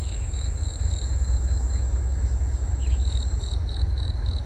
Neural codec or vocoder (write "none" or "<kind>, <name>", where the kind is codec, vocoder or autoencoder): autoencoder, DAC-VAE